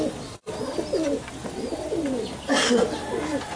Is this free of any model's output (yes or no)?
no